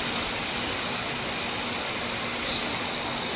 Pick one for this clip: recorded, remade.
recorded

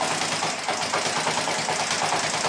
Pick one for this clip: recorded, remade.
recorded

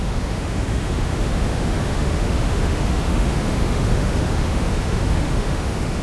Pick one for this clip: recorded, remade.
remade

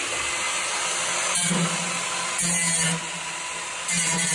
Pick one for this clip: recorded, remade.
recorded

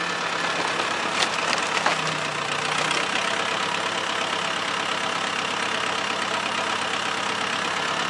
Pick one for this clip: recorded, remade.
recorded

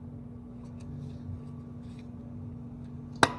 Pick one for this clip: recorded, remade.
recorded